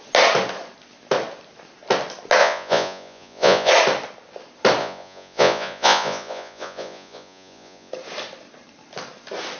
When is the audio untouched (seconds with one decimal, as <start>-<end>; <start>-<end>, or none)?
0.0-2.4; 3.7-4.8; 7.9-9.6